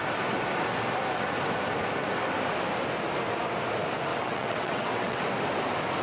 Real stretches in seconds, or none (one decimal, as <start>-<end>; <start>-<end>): 0.0-4.1; 5.2-6.0